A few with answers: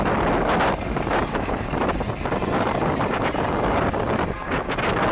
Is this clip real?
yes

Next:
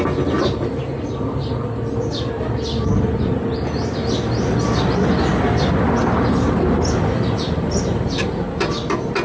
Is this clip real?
yes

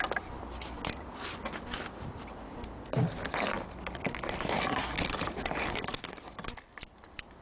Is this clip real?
yes